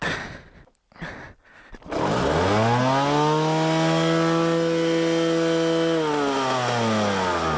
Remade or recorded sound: recorded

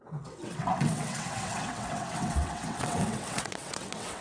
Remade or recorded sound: remade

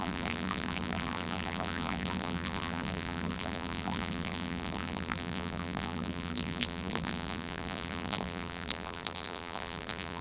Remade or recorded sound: remade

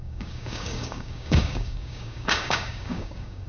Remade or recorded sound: remade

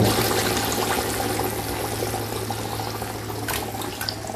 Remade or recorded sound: recorded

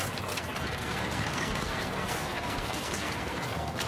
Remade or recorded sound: remade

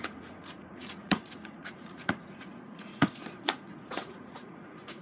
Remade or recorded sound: remade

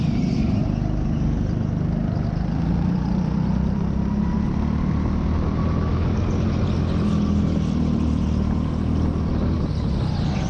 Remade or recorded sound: recorded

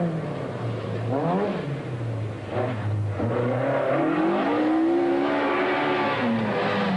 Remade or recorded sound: recorded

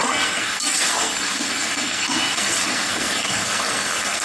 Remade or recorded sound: remade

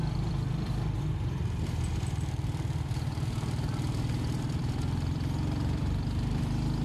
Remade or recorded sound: remade